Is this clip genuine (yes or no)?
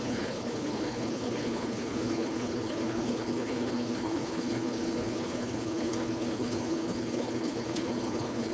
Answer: no